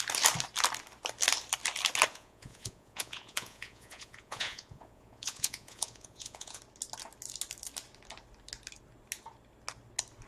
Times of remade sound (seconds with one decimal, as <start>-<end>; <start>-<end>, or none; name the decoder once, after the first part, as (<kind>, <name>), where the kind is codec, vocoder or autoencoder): 2.1-6.6 (vocoder, Vocos)